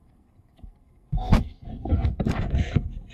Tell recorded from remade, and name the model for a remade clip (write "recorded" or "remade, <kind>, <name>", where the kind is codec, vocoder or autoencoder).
remade, codec, SNAC